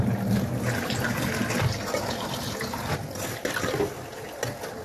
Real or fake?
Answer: real